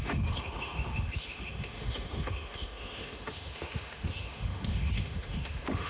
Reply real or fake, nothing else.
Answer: fake